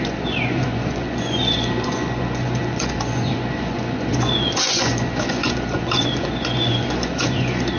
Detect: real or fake fake